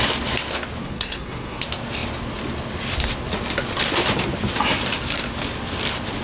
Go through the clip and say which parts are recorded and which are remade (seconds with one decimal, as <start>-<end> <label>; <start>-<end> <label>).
0.0-0.8 recorded; 0.8-1.6 remade; 1.6-6.2 recorded